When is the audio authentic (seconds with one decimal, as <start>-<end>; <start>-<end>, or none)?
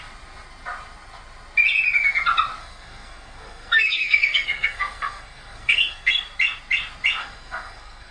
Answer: 0.0-2.6; 6.1-7.2